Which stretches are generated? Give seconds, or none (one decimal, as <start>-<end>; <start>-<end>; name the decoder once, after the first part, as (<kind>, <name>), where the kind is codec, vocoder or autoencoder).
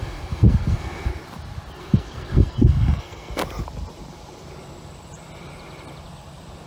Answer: 0.0-1.1 (codec, SNAC); 1.8-3.4